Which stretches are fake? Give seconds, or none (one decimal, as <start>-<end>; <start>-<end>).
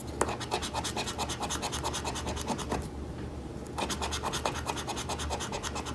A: none